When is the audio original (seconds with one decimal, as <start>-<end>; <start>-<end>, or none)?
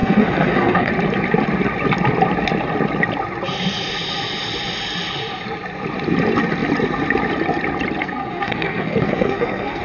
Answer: 0.9-8.0